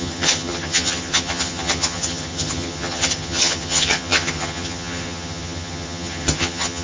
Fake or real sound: fake